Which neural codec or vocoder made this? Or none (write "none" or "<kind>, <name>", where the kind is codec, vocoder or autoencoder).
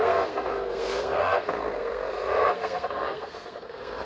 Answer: codec, SNAC